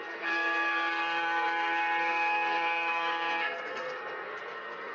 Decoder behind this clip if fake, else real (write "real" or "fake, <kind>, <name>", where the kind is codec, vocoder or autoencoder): fake, codec, SNAC